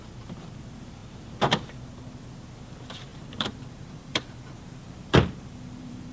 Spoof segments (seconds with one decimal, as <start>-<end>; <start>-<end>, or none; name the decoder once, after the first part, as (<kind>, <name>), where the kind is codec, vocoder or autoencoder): 3.1-6.1 (vocoder, BigVGAN v2)